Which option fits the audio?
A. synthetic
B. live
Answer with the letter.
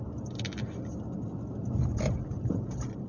B